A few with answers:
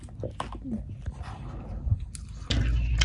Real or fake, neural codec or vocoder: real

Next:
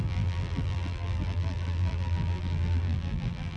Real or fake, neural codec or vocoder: fake, vocoder, BigVGAN v2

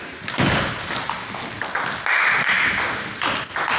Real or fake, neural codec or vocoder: real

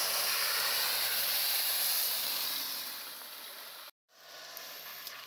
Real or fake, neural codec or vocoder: real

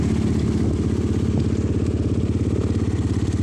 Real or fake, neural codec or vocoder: real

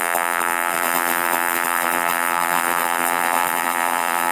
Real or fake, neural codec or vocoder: fake, vocoder, BigVGAN v2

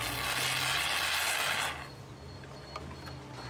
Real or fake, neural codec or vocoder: real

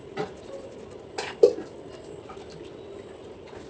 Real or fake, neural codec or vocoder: real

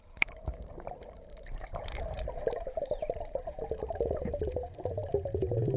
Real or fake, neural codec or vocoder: fake, vocoder, BigVGAN v2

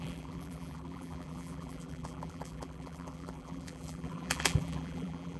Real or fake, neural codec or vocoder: fake, vocoder, BigVGAN v2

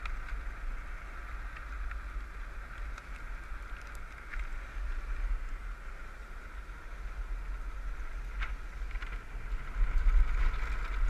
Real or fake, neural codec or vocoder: real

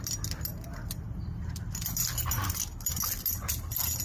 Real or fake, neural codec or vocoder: real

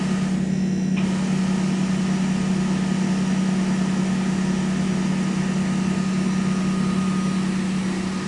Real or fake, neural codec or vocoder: real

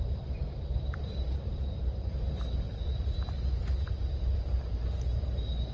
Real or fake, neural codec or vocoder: fake, vocoder, BigVGAN v2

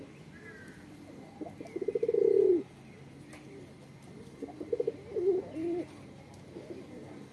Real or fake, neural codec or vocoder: real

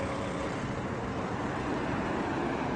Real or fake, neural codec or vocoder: real